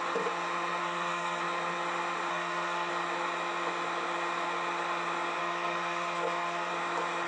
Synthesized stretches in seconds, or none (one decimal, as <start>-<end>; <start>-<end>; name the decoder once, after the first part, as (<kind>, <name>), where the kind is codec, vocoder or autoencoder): 0.8-1.4 (codec, SNAC); 2.3-2.9; 5.4-6.7